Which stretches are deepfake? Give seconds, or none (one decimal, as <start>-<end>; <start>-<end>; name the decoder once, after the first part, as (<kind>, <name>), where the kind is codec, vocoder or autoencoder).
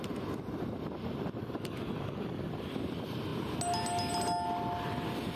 1.4-2.5 (codec, DAC)